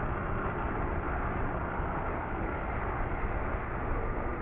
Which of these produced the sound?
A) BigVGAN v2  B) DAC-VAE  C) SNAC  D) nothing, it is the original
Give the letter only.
D